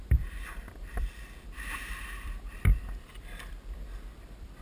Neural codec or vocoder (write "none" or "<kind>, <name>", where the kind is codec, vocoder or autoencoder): vocoder, BigVGAN v2